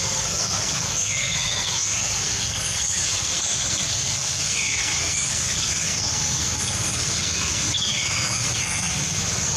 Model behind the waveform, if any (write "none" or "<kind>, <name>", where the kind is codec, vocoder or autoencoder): codec, SNAC